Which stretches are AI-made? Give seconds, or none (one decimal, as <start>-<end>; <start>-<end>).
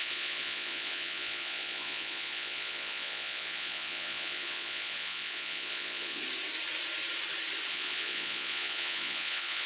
0.0-6.2; 7.7-9.7